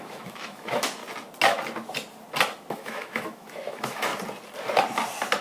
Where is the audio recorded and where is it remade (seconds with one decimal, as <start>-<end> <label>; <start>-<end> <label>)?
0.0-1.0 remade; 1.0-2.7 recorded; 2.7-4.1 remade; 4.1-5.4 recorded